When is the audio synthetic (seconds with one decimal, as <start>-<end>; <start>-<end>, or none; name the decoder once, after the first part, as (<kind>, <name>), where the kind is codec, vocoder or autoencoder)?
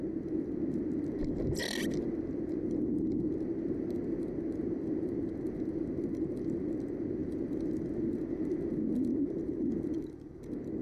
7.2-10.3 (vocoder, BigVGAN v2)